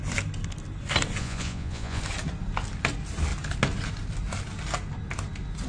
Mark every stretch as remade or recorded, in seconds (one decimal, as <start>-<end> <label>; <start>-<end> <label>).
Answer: 0.0-1.2 recorded; 1.2-2.0 remade; 2.0-5.7 recorded